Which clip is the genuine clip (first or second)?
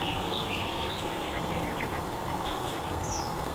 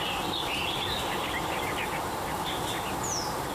second